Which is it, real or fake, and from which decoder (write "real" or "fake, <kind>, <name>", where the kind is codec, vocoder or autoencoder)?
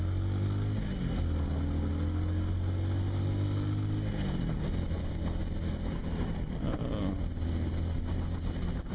real